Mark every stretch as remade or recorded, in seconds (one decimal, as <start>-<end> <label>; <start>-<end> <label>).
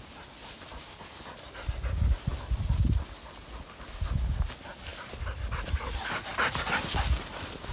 0.0-7.7 recorded